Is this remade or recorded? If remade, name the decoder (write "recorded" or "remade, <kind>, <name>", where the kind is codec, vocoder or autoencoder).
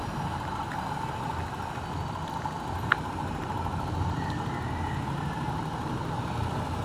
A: recorded